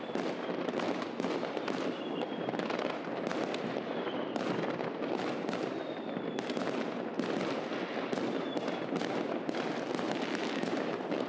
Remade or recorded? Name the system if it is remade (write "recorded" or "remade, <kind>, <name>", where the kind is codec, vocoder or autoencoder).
recorded